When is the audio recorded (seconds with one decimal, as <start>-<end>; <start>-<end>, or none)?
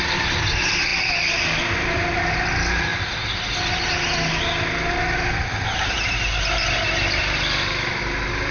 0.0-8.5